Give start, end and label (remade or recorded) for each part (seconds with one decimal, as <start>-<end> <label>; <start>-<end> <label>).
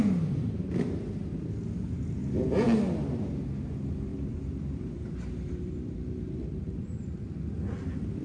0.0-4.1 recorded; 4.1-7.0 remade; 7.0-8.2 recorded